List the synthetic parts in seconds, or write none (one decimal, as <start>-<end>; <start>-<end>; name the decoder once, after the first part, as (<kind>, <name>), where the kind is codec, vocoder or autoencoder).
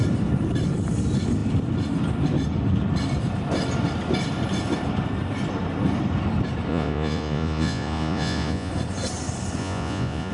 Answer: 6.7-8.7 (vocoder, Vocos); 9.6-10.3